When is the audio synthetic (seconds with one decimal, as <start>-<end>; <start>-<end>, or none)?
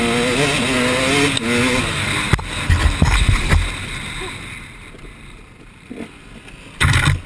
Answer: none